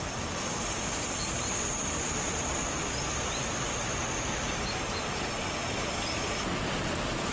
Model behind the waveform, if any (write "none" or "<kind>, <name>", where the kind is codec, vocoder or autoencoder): vocoder, BigVGAN v2